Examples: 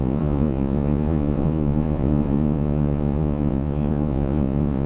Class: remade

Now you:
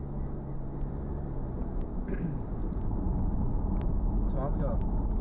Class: recorded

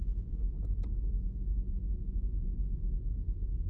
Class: recorded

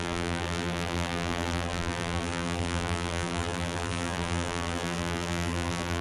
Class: remade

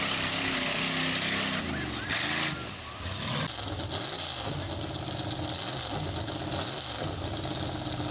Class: recorded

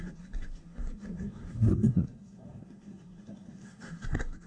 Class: remade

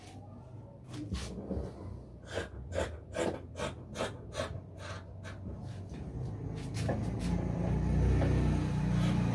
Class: recorded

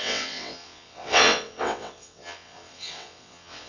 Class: remade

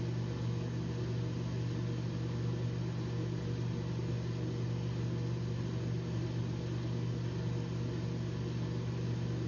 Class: recorded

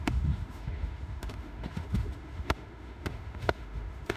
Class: remade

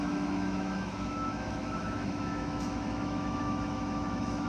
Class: remade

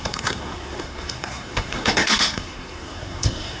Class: remade